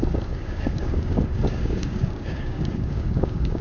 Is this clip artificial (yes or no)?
yes